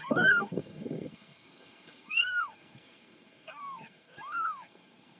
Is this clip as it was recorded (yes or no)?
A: no